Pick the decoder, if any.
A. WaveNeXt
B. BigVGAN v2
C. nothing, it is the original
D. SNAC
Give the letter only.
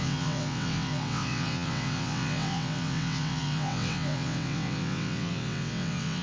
A